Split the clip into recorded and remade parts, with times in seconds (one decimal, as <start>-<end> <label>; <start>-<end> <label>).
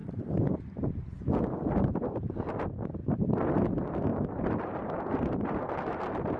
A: 0.0-3.0 recorded; 3.0-3.5 remade; 3.5-4.1 recorded; 4.1-6.4 remade